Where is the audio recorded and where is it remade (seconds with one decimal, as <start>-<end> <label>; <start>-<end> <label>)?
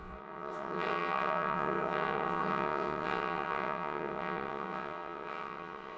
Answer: 0.0-6.0 remade